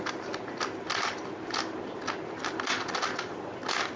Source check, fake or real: real